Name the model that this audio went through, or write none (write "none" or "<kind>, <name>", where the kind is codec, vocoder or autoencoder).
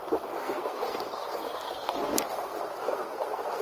codec, SNAC